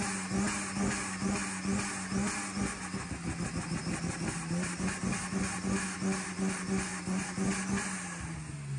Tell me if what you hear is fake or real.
real